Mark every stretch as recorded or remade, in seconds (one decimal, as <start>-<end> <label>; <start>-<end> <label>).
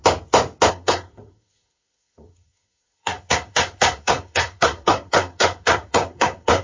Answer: 0.0-0.7 recorded; 0.7-6.6 remade